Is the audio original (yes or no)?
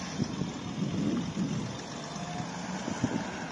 yes